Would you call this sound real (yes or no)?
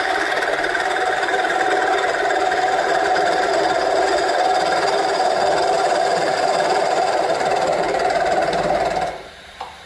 no